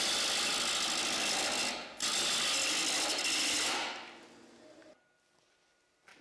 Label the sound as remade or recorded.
recorded